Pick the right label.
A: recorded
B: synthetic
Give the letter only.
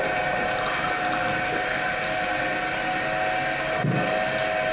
A